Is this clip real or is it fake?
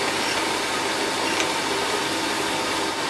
real